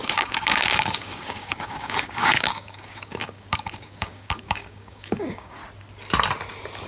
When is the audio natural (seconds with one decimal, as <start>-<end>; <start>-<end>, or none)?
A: 5.6-6.9